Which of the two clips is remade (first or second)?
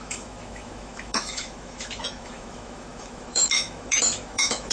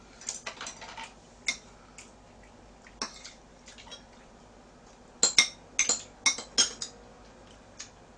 first